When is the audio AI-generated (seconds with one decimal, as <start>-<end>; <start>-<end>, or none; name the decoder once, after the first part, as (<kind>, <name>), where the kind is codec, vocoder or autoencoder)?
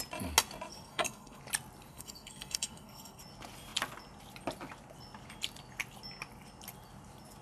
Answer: 0.7-1.4 (codec, SNAC); 1.9-3.2